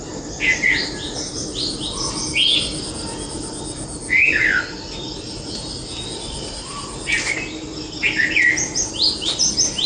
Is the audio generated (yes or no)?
no